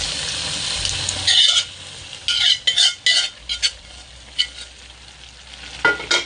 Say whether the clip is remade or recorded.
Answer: recorded